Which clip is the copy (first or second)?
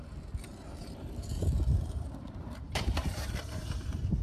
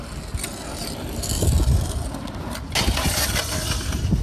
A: first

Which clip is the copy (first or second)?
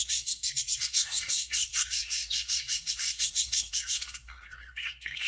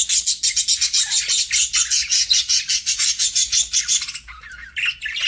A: first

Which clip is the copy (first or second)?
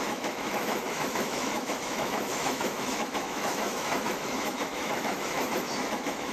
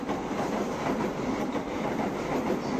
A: first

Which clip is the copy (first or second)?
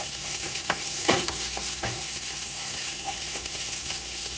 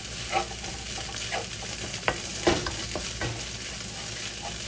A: first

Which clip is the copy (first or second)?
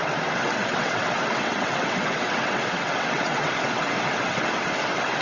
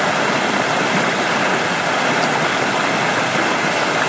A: first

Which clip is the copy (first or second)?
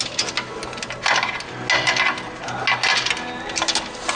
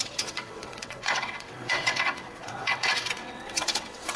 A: second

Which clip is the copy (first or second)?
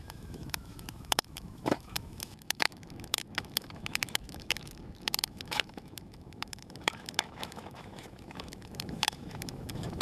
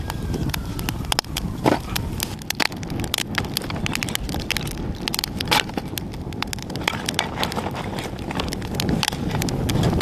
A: first